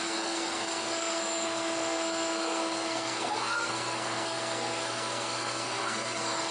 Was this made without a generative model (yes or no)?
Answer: no